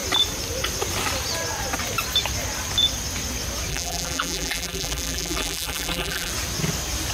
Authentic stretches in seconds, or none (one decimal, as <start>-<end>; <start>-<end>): 0.0-3.7; 6.3-7.1